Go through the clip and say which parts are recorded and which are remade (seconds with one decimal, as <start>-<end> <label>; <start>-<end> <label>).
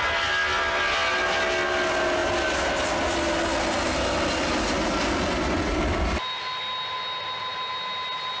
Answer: 0.0-8.4 recorded